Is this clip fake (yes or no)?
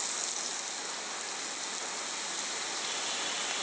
no